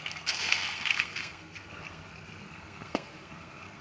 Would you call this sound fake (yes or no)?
yes